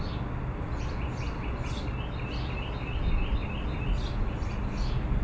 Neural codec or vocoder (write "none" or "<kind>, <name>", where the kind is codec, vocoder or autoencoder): none